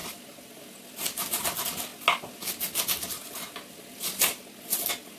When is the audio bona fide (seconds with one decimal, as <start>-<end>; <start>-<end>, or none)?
0.0-5.2